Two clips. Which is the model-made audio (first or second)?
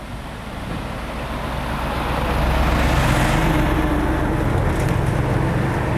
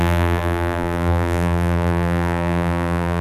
second